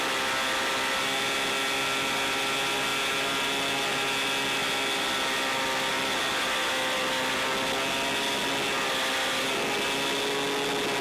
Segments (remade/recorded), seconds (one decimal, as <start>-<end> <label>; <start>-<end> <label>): 0.0-11.0 recorded